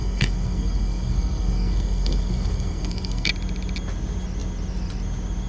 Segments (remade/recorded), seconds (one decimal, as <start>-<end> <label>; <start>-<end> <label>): 0.0-3.3 remade; 3.3-5.5 recorded

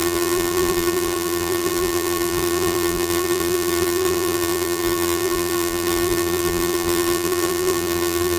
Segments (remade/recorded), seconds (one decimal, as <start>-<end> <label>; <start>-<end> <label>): 0.0-8.4 remade

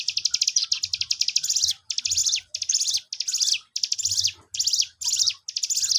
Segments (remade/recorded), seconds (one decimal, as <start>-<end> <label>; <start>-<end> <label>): 0.0-6.0 recorded

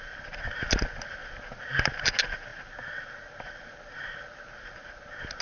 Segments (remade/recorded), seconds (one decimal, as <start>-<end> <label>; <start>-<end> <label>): 0.0-5.4 recorded

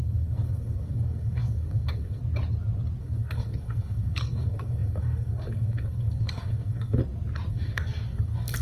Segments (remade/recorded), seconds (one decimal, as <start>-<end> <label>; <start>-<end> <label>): 0.0-2.2 remade; 2.2-3.0 recorded; 3.0-7.0 remade; 7.0-7.5 recorded; 7.5-8.6 remade

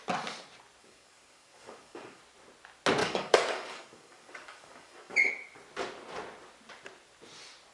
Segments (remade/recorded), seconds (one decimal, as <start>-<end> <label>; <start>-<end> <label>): 0.0-0.8 recorded; 0.8-2.2 remade; 2.2-3.0 recorded; 3.0-5.3 remade; 5.3-7.7 recorded

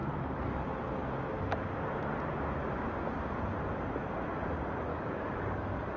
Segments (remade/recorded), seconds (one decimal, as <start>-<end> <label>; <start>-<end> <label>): 0.0-0.6 remade; 0.6-4.9 recorded; 4.9-6.0 remade

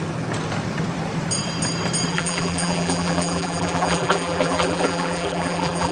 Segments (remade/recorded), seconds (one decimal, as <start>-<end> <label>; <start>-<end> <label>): 0.0-2.1 recorded; 2.1-5.9 remade